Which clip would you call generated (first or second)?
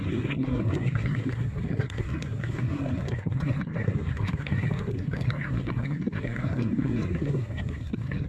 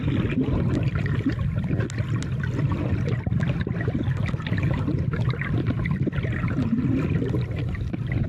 first